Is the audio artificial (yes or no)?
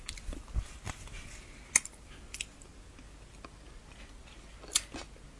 no